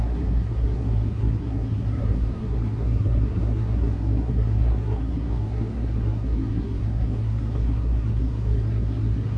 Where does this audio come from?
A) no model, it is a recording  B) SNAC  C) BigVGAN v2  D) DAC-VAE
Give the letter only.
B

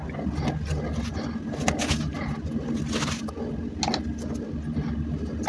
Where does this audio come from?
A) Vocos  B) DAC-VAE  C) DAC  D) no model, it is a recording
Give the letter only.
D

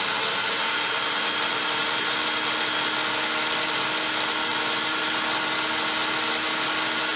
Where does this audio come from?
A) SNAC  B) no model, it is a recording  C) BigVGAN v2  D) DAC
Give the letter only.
B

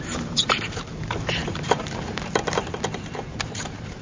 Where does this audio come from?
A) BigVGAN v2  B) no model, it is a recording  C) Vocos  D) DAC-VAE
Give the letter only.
A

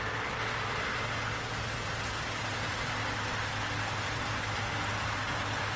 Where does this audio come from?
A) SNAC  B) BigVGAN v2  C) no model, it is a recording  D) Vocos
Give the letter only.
C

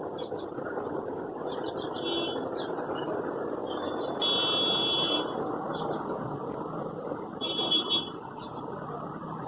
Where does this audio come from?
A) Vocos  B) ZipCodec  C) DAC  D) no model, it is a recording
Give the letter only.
D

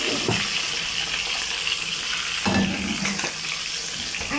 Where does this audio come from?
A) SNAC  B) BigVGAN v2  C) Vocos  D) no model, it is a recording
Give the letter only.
D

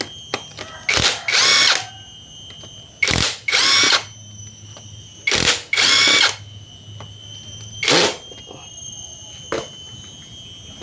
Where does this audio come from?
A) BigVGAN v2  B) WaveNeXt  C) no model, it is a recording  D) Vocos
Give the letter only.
C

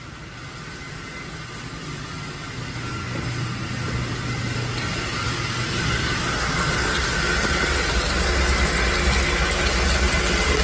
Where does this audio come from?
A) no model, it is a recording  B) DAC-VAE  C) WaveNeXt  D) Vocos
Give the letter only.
A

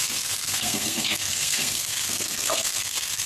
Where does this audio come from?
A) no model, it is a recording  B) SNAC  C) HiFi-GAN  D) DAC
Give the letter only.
B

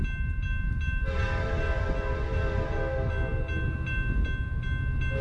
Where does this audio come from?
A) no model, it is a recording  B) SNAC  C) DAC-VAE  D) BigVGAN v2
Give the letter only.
A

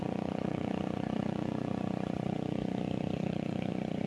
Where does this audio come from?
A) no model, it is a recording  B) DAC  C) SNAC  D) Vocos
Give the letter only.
D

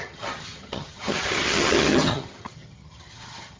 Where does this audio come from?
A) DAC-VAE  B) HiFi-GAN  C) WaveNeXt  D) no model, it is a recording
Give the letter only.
B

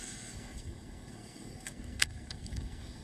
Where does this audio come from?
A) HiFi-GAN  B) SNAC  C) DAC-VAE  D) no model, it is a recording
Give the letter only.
B